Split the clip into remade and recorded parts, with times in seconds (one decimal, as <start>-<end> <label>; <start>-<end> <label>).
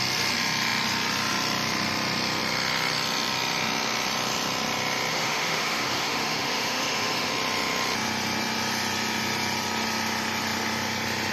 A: 0.0-5.1 recorded; 5.1-7.3 remade; 7.3-11.3 recorded